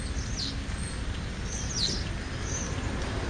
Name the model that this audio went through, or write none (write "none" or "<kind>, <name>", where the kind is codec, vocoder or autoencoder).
none